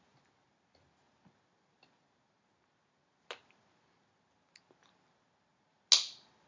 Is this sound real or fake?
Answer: real